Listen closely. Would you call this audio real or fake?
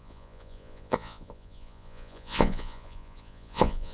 fake